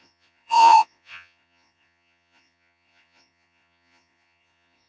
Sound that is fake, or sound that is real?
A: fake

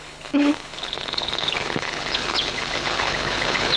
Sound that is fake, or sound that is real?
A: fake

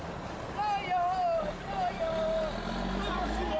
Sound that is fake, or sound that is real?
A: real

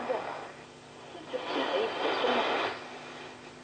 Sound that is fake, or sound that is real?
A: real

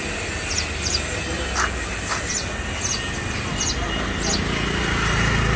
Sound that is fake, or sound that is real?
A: real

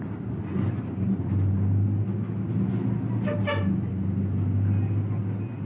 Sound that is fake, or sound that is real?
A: real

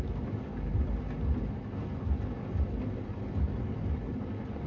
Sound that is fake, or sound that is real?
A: real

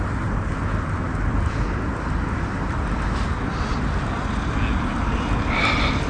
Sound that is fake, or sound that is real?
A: real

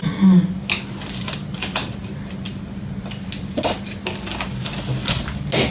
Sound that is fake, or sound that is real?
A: real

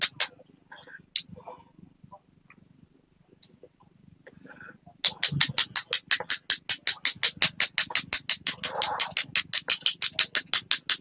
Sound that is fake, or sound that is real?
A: real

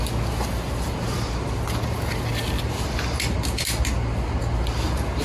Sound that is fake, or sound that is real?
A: real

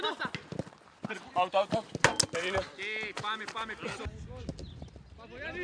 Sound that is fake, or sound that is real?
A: real